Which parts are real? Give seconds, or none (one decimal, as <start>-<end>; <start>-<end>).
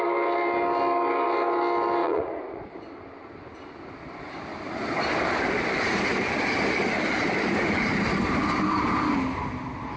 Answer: 0.0-2.0; 2.7-10.0